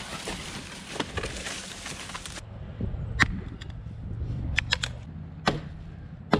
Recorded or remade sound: recorded